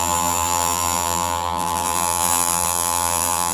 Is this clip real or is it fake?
fake